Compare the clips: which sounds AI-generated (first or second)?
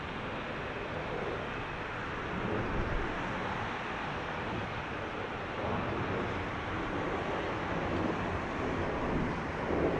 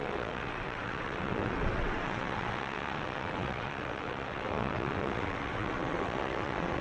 second